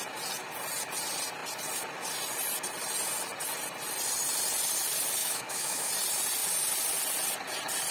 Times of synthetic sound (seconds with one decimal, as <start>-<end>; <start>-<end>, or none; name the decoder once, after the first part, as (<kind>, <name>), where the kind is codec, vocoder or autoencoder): 5.2-5.9 (autoencoder, DAC-VAE)